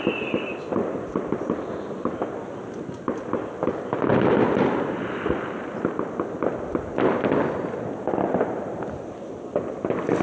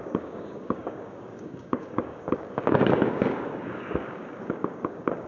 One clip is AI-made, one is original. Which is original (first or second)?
first